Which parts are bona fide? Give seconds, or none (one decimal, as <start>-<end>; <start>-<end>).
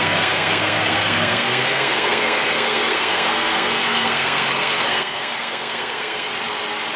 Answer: 6.3-7.0